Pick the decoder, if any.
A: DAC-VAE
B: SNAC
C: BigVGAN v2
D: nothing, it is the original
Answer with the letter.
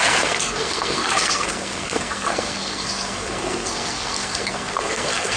B